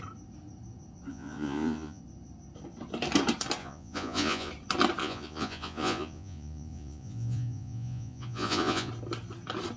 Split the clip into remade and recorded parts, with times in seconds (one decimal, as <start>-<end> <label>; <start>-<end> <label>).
0.0-1.1 recorded; 1.1-2.0 remade; 2.0-3.6 recorded; 3.6-4.5 remade; 4.5-5.0 recorded; 5.0-8.9 remade; 8.9-9.8 recorded